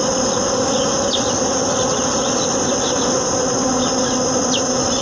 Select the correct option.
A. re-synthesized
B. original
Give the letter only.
B